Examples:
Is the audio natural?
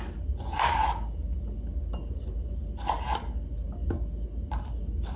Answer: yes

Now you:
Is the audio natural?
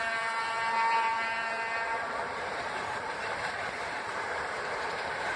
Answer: no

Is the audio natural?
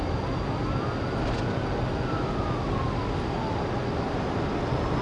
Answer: yes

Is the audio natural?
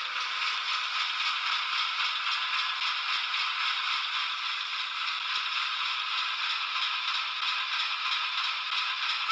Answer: yes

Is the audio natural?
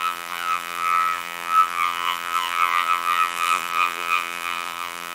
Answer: no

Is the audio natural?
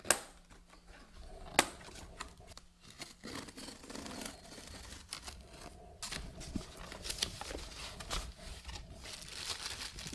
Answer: yes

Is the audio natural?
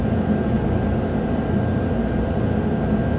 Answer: yes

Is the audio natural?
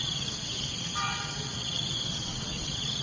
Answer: no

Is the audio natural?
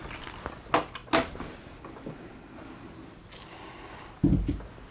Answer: yes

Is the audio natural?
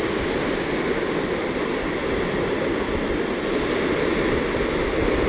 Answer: yes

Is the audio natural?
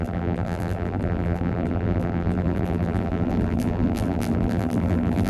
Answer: no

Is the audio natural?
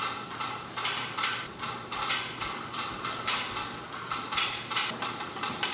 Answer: yes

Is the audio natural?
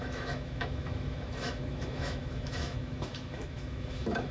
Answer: no